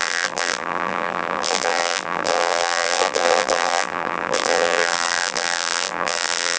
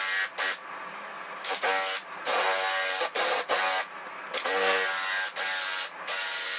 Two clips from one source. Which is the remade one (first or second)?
first